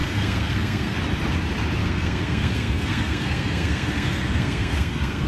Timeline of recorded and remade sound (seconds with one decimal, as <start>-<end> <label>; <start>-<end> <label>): 0.0-1.0 remade; 1.0-1.8 recorded; 1.8-5.3 remade